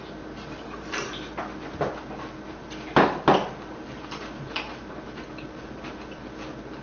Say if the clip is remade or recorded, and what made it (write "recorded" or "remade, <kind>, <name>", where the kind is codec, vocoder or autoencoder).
recorded